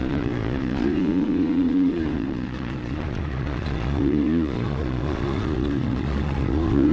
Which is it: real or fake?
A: fake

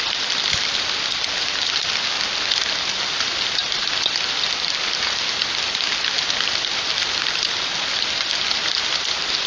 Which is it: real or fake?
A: real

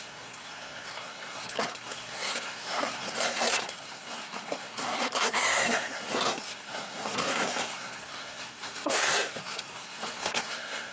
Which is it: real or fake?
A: fake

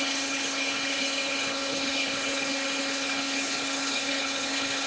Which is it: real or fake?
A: fake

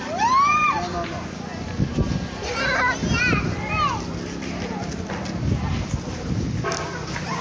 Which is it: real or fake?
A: real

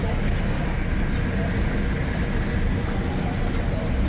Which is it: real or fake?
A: real